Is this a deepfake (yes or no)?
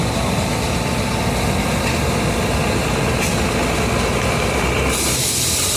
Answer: no